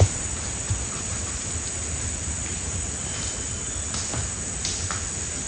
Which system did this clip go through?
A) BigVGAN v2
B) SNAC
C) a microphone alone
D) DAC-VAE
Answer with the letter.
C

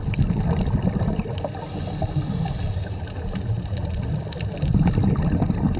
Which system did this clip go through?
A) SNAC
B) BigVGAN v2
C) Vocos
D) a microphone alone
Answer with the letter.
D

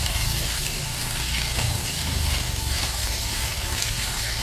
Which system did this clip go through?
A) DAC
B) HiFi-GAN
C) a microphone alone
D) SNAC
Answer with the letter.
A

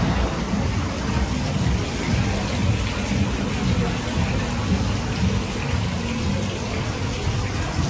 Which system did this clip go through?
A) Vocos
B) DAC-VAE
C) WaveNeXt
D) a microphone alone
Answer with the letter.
D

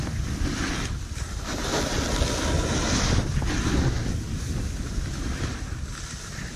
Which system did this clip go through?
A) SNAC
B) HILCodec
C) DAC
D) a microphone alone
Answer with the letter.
D